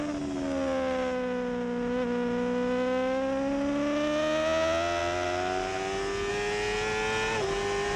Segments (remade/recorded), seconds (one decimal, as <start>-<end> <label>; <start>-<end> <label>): 0.0-8.0 recorded